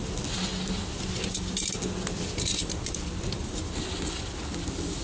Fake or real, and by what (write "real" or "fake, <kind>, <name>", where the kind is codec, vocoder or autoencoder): real